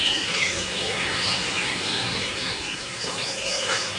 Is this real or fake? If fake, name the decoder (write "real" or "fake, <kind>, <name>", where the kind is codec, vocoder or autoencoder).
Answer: fake, codec, SNAC